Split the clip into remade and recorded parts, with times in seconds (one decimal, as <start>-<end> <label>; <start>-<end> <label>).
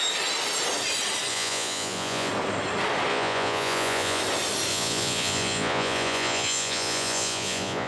0.0-1.3 recorded; 1.3-2.3 remade; 2.3-3.1 recorded; 3.1-4.2 remade; 4.2-4.7 recorded; 4.7-7.9 remade